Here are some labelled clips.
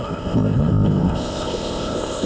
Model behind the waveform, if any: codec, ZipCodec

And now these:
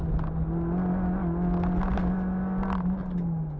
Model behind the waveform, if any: none